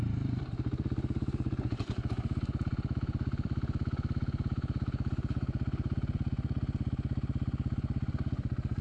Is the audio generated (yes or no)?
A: yes